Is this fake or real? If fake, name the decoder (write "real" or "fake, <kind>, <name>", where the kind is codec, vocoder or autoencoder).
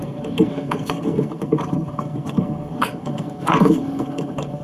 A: fake, codec, SNAC